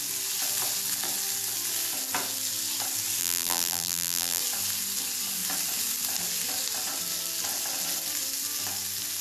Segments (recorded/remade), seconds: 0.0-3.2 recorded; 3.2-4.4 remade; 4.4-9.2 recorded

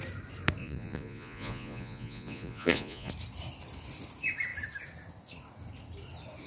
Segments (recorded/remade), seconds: 0.0-0.6 recorded; 0.6-3.1 remade; 3.1-6.5 recorded

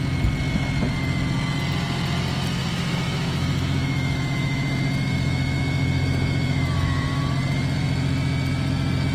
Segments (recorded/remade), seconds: 0.0-2.6 recorded; 2.6-7.2 remade; 7.2-9.1 recorded

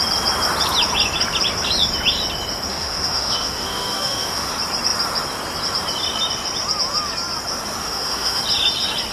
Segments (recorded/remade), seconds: 0.0-2.7 recorded; 2.7-4.5 remade; 4.5-7.8 recorded; 7.8-8.4 remade; 8.4-9.1 recorded

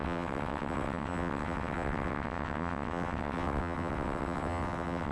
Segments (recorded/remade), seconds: 0.0-5.1 remade